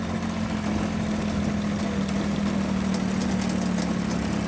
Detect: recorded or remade recorded